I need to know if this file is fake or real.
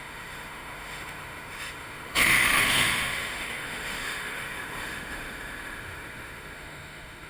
fake